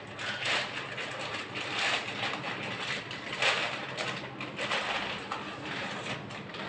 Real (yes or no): yes